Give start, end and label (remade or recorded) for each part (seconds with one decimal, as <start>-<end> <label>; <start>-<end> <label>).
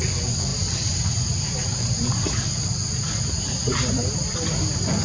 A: 0.0-5.0 recorded